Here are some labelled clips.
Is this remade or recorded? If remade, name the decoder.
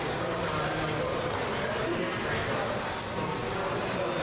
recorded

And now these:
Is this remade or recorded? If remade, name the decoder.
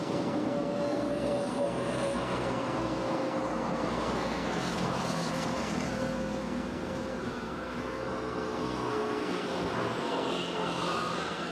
remade, codec, SNAC